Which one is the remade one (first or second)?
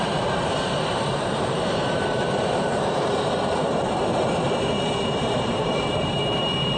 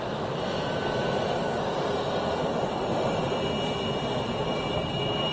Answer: first